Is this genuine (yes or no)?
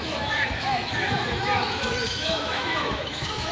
no